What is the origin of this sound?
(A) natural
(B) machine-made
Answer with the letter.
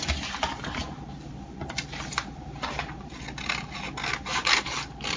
A